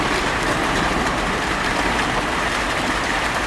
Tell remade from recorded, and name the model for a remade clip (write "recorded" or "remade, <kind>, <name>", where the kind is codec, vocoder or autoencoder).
recorded